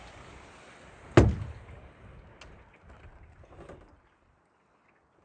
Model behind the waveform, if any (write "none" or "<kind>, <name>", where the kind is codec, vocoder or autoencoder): none